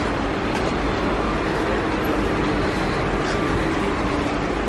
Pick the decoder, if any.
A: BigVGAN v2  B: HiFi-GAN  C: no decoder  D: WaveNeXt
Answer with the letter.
C